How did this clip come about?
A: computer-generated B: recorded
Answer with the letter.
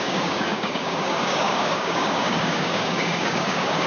A